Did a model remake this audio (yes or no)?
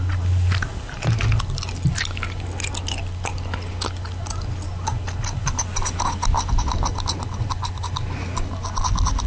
no